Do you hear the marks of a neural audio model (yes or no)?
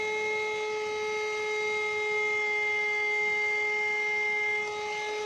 no